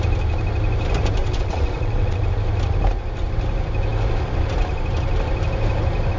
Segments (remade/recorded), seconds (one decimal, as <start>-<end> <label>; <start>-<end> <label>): 0.0-1.2 recorded; 1.2-2.2 remade; 2.2-6.2 recorded